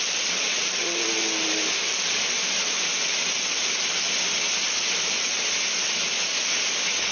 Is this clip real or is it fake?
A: real